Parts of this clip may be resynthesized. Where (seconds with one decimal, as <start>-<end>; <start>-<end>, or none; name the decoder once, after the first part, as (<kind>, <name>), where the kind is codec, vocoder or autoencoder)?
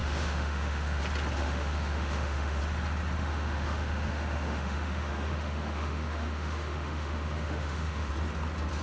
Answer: 0.0-1.0 (autoencoder, DAC-VAE); 1.4-2.6; 3.2-8.1